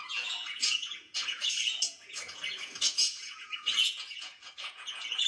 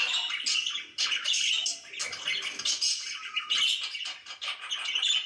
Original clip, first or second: second